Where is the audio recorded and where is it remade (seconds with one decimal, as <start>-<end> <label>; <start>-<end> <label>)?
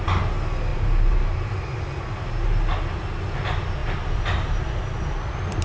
0.0-0.7 recorded; 0.7-1.5 remade; 1.5-3.8 recorded; 3.8-4.8 remade; 4.8-5.6 recorded